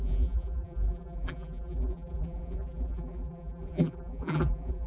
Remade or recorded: remade